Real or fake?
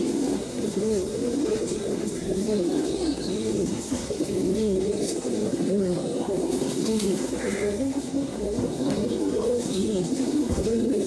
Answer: fake